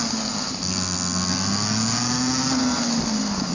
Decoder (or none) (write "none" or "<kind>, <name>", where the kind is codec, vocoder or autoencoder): none